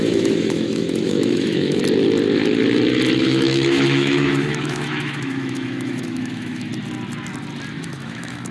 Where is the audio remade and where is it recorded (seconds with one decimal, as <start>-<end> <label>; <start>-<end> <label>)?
0.0-1.8 remade; 1.8-3.2 recorded; 3.2-6.7 remade; 6.7-7.7 recorded; 7.7-8.5 remade